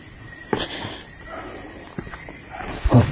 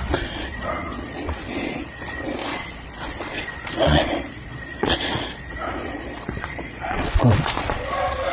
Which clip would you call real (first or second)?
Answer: first